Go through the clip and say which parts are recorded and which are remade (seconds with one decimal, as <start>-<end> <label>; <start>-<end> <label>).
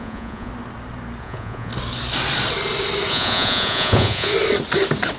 0.0-0.5 remade; 0.5-1.2 recorded; 1.2-1.7 remade; 1.7-3.1 recorded; 3.1-4.3 remade; 4.3-5.2 recorded